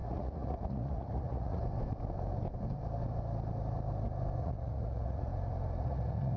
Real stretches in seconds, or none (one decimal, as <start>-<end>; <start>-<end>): 1.6-4.4; 5.3-5.8